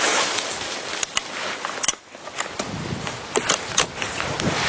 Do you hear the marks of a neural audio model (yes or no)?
no